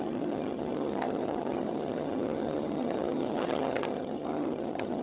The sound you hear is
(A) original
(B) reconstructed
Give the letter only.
B